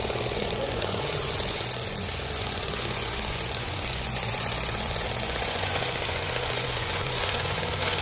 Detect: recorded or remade remade